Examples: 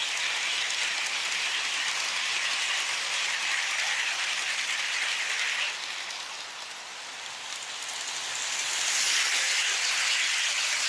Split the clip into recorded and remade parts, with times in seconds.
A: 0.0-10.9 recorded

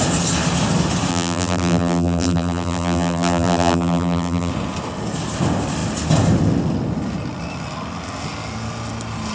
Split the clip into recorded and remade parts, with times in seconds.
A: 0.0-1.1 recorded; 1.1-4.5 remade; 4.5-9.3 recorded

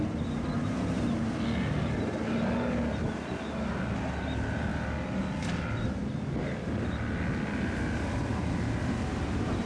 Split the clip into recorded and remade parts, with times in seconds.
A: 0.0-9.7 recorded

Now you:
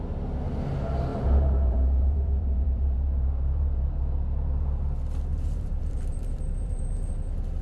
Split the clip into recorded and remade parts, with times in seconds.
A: 0.0-1.1 recorded; 1.1-4.0 remade; 4.0-5.3 recorded; 5.3-7.1 remade; 7.1-7.6 recorded